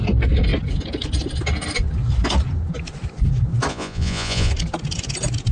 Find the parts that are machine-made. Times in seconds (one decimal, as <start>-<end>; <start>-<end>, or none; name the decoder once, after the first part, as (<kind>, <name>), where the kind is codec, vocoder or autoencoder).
3.7-4.5 (vocoder, Vocos)